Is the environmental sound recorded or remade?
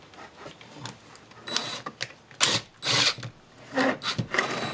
recorded